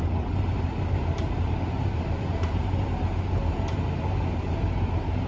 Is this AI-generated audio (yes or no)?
yes